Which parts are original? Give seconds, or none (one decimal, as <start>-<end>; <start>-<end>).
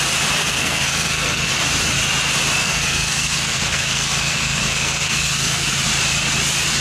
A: 0.0-0.4; 1.5-2.6; 5.7-6.8